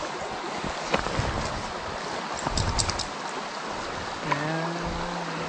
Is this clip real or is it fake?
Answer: real